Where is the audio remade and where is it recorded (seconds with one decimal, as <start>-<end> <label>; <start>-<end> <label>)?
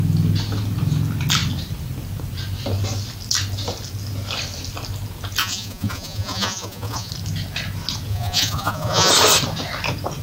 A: 0.0-5.4 recorded; 5.4-7.1 remade; 7.1-8.1 recorded; 8.1-9.1 remade; 9.1-10.2 recorded